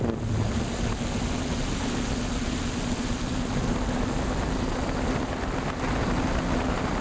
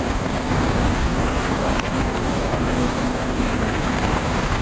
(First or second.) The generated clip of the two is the second